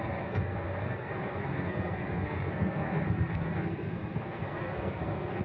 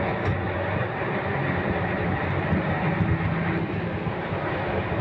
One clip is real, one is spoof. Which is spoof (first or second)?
first